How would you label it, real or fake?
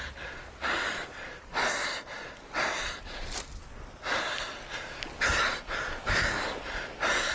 real